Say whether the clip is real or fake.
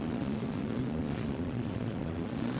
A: fake